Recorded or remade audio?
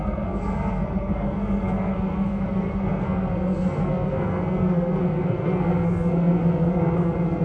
remade